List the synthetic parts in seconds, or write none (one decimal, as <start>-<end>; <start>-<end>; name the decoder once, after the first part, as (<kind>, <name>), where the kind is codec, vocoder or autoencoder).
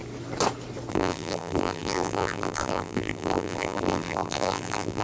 0.9-5.0 (vocoder, BigVGAN v2)